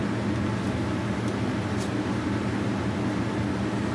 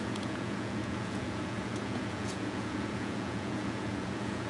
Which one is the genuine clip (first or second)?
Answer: first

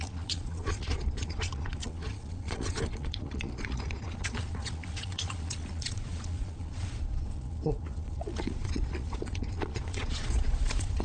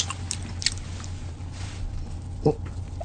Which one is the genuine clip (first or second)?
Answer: second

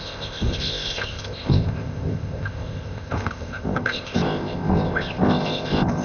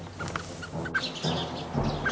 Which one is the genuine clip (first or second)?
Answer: second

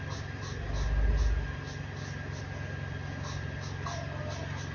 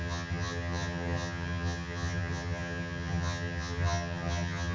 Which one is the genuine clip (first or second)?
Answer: first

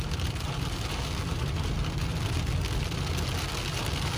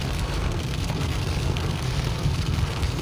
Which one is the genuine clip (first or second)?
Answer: first